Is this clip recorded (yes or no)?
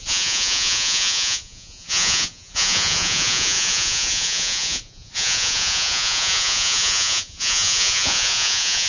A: no